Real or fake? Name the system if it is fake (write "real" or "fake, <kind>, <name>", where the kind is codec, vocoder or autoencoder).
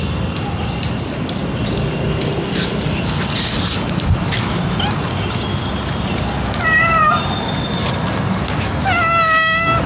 real